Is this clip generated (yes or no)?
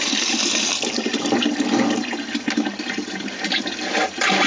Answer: no